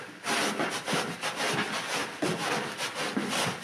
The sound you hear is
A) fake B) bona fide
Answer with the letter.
B